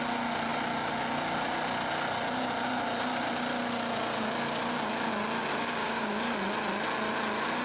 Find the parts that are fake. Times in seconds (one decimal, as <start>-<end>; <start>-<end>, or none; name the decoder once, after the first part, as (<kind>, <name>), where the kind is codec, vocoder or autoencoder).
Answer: 5.5-6.1 (codec, DAC)